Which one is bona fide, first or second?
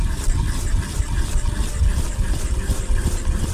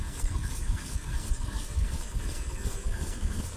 first